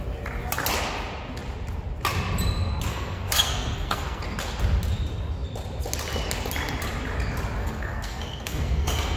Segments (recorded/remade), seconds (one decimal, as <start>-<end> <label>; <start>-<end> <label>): 0.0-2.9 recorded; 2.9-4.2 remade; 4.2-7.6 recorded; 7.6-9.2 remade